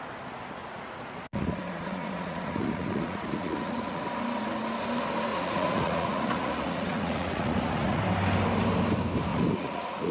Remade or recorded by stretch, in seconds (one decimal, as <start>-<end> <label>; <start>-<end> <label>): 0.0-0.6 recorded; 0.6-4.0 remade; 4.0-5.3 recorded; 5.3-8.0 remade; 8.0-9.3 recorded; 9.3-10.1 remade